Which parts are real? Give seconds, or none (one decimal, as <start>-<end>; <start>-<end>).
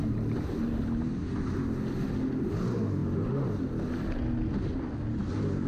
1.8-5.7